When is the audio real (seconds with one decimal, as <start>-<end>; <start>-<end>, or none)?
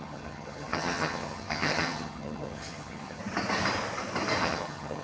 3.2-4.4